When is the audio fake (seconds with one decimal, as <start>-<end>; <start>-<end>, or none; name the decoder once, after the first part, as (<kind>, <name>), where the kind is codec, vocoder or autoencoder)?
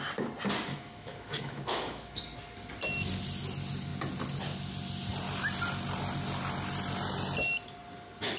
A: 0.7-2.2 (autoencoder, DAC-VAE)